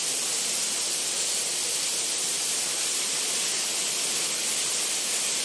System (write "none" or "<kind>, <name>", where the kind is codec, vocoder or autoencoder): none